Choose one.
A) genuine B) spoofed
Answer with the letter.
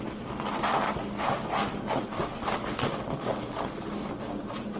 A